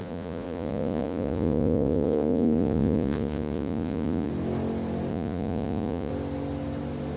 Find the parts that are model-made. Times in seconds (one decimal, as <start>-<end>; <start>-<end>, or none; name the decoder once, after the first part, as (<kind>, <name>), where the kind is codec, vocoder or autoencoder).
0.0-4.3 (vocoder, Vocos); 5.1-6.1